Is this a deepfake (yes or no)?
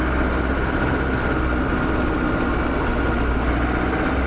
no